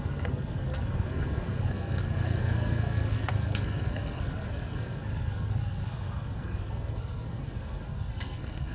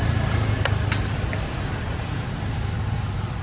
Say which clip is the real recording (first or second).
second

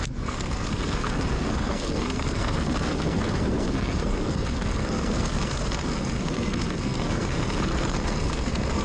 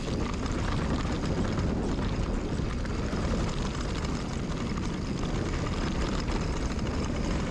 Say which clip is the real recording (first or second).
second